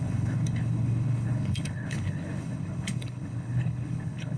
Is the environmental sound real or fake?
fake